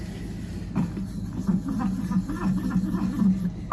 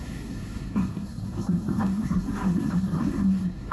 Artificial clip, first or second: second